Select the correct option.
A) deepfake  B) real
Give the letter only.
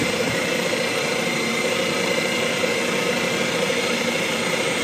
A